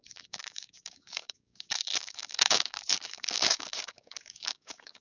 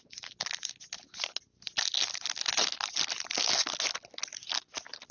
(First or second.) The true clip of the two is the second